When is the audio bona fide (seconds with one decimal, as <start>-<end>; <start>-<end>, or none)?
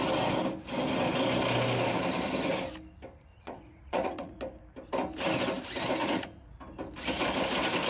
0.0-3.3; 4.4-6.0; 6.6-7.9